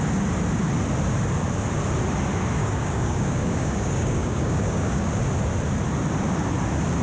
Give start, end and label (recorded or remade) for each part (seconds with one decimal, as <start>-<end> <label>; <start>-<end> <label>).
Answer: 0.0-2.6 recorded; 2.6-5.1 remade; 5.1-7.0 recorded